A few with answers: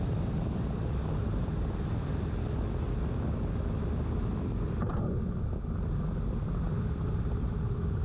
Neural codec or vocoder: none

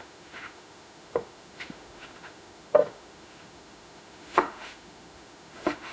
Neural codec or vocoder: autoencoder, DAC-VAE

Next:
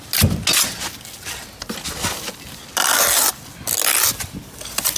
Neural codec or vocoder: none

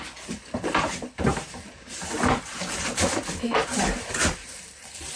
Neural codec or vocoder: vocoder, BigVGAN v2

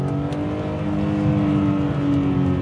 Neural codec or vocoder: none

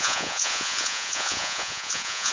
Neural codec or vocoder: vocoder, Vocos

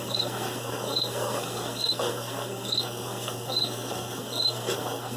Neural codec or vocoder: codec, SNAC